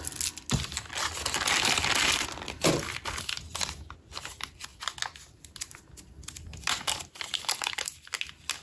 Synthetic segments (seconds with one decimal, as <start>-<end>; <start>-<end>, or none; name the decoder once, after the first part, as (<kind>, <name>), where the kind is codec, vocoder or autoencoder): none